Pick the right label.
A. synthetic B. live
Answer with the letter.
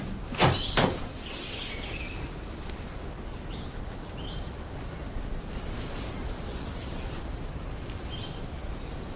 B